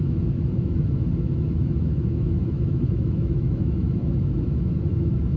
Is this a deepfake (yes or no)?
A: yes